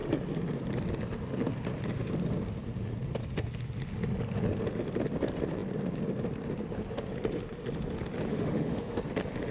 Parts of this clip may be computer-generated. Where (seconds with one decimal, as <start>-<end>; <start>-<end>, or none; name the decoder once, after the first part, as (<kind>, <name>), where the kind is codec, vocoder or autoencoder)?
8.3-9.0 (autoencoder, DAC-VAE)